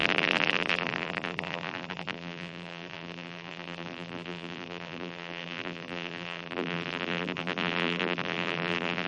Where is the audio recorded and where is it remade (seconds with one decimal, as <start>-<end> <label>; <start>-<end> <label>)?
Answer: 0.0-9.1 remade